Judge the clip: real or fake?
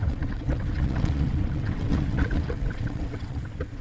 fake